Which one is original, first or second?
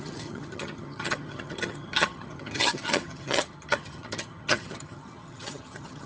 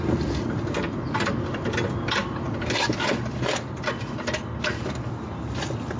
second